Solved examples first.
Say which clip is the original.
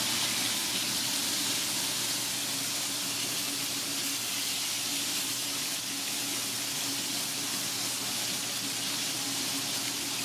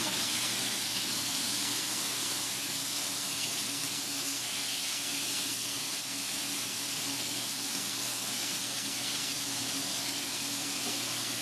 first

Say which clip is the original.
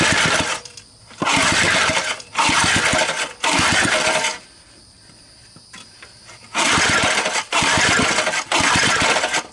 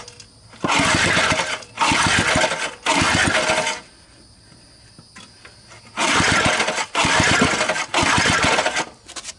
second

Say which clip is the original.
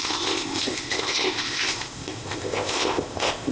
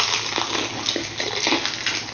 second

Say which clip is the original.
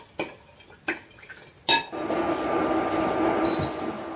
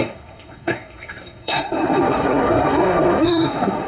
first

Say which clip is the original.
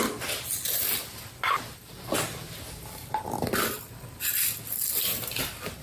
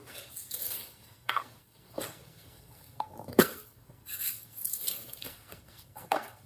first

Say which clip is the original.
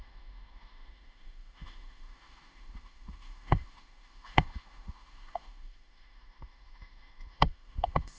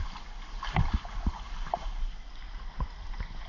second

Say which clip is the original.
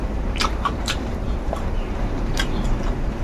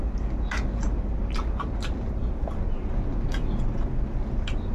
second